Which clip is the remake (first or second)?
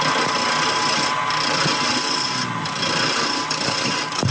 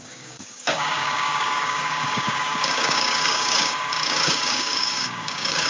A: second